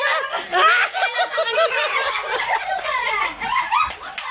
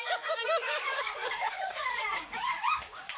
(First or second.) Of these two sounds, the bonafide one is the first